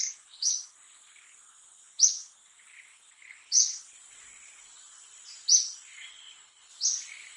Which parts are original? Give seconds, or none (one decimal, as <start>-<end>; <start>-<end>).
0.5-3.1; 3.6-6.1; 6.7-7.4